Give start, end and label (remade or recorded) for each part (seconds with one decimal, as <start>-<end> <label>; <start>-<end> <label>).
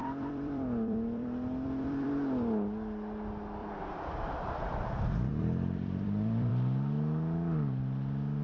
0.0-2.1 remade; 2.1-3.6 recorded; 3.6-4.6 remade; 4.6-5.3 recorded; 5.3-6.5 remade; 6.5-8.4 recorded